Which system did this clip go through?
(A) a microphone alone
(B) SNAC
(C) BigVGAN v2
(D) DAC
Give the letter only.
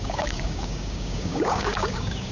D